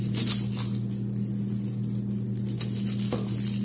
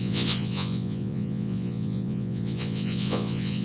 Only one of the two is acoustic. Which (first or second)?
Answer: first